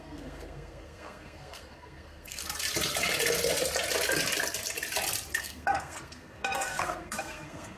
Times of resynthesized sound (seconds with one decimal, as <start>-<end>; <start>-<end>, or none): 0.0-2.4; 5.4-7.8